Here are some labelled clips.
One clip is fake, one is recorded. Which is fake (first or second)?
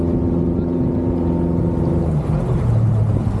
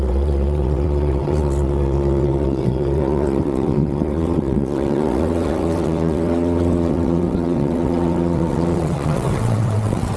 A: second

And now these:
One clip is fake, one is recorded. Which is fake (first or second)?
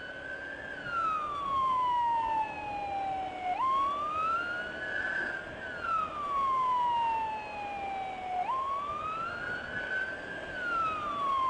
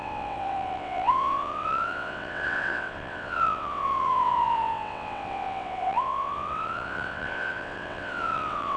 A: second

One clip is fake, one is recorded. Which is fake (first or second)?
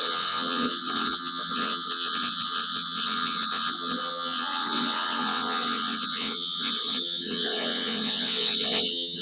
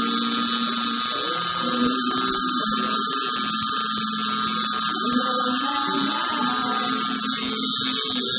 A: first